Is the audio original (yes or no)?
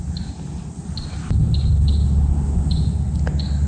yes